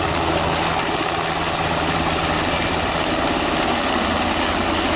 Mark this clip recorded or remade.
recorded